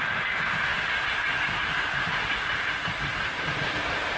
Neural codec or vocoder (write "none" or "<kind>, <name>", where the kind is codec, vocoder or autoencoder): none